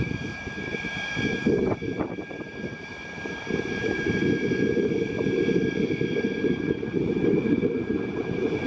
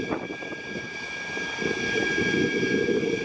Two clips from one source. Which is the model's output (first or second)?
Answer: first